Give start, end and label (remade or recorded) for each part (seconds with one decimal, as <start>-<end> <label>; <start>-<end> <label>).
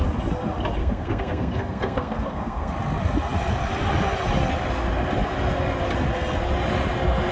0.0-0.8 recorded; 0.8-2.7 remade; 2.7-7.3 recorded